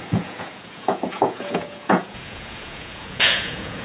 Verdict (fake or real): fake